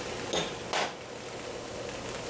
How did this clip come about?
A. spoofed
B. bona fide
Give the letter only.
B